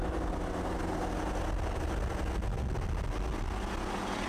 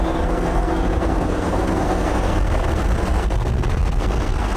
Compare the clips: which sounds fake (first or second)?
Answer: second